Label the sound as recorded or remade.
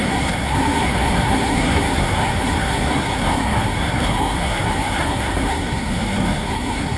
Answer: remade